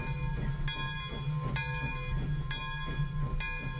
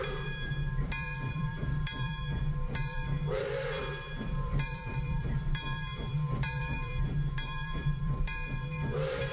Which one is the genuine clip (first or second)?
first